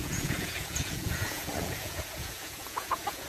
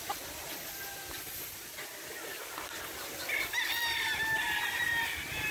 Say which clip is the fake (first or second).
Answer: first